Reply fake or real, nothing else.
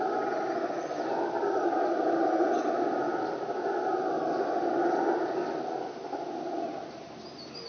real